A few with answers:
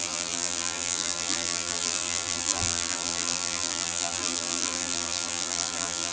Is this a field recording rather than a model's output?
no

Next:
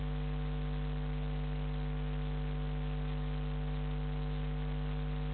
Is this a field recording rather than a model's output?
yes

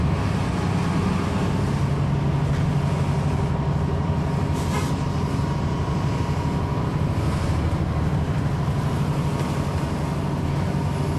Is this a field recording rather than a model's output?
yes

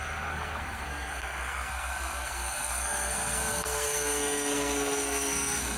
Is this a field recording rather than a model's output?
no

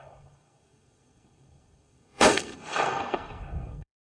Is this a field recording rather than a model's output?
no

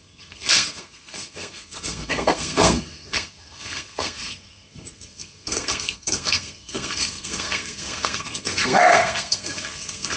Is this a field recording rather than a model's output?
no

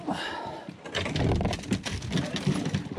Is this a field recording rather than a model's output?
yes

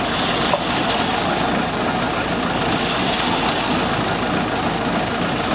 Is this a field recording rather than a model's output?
yes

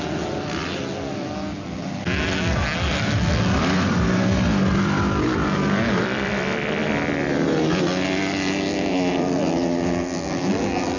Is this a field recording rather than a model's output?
yes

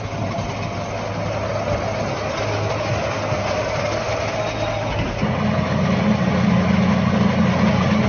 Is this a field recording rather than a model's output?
yes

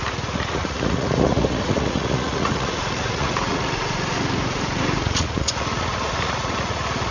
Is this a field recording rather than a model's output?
no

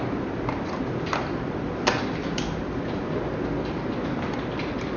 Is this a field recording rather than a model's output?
yes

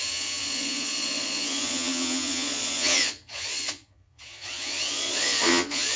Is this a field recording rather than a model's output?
no